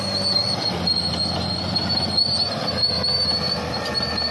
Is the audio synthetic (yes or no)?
no